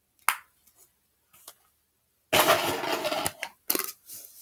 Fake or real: real